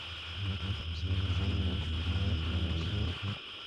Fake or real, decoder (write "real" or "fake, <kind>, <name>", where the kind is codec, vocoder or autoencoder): real